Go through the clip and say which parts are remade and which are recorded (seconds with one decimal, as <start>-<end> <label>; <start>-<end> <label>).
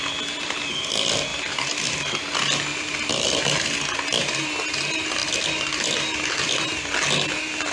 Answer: 0.0-1.3 recorded; 1.3-2.2 remade; 2.2-2.7 recorded; 2.7-3.4 remade; 3.4-5.2 recorded; 5.2-6.8 remade; 6.8-7.7 recorded